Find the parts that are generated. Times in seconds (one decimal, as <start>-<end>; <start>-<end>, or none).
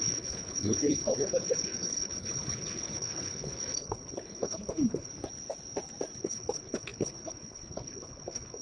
0.0-5.1; 6.2-8.6